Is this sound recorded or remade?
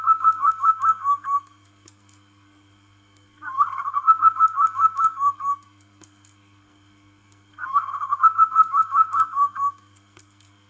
remade